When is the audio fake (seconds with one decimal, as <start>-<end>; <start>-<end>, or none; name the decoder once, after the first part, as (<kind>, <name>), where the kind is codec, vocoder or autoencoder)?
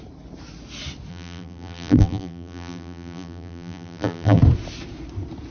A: 1.1-4.4 (vocoder, BigVGAN v2)